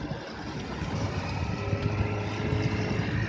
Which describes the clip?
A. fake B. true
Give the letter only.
B